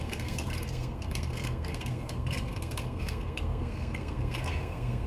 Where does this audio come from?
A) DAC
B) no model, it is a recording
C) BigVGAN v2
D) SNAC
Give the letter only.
D